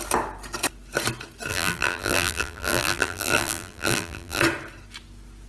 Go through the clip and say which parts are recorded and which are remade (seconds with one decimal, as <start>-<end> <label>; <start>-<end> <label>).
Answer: 0.0-1.5 recorded; 1.5-4.4 remade; 4.4-5.5 recorded